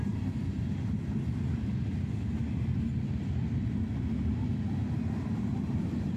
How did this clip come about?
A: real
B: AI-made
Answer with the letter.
A